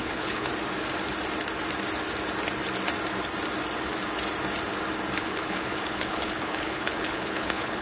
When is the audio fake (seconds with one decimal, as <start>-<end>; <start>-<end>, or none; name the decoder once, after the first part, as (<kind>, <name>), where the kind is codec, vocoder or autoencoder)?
0.0-0.5 (codec, HILCodec); 5.2-7.8

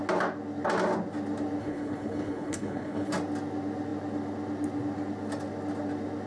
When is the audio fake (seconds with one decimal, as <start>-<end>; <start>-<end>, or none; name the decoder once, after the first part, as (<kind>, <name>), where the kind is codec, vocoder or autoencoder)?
1.6-3.1 (codec, HILCodec)

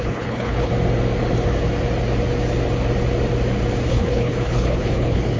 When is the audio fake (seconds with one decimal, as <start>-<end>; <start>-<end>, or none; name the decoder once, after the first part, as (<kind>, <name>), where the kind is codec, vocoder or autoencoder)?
0.0-0.7 (codec, HILCodec); 3.9-5.4

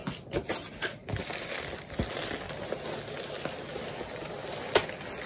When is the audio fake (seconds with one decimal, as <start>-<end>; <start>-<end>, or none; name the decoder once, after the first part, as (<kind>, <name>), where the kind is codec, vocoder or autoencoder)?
none

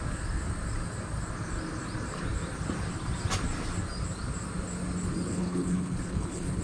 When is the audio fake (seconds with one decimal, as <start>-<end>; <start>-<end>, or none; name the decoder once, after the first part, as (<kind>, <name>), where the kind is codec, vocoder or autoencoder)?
5.3-6.6 (codec, HILCodec)